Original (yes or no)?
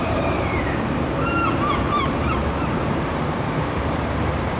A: no